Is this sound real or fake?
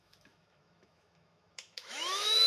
fake